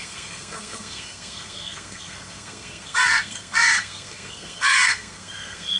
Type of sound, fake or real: fake